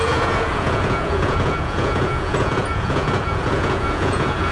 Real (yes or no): no